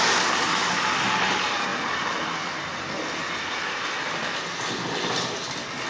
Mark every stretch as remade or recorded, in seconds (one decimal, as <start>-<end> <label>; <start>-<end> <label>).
0.0-5.9 recorded